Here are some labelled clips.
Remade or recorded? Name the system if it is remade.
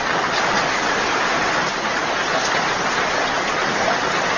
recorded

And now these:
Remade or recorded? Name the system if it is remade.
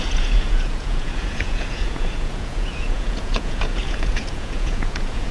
remade, vocoder, Vocos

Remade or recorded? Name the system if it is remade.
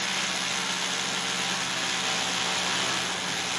recorded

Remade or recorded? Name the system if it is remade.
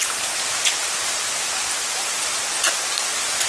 recorded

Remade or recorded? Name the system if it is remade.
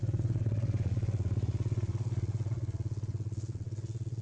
remade, vocoder, Vocos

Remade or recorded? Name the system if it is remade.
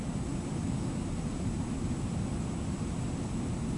recorded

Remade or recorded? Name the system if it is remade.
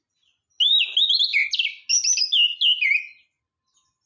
recorded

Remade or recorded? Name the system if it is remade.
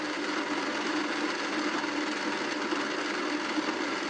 recorded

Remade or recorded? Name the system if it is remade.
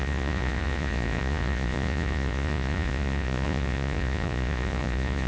remade, vocoder, Vocos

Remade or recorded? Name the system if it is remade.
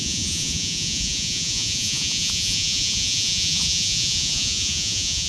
remade, vocoder, Vocos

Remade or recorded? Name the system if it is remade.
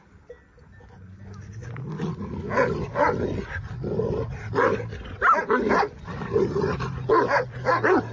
recorded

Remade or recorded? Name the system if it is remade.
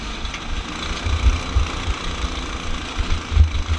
recorded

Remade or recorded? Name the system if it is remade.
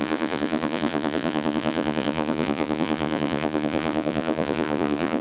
remade, vocoder, Vocos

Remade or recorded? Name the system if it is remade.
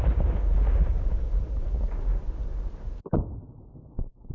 recorded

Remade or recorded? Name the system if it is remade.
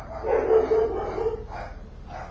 recorded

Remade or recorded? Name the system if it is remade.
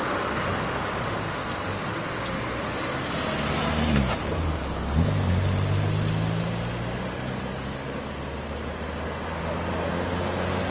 recorded